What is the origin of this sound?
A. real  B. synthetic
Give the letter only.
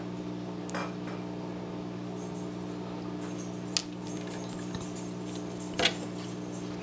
A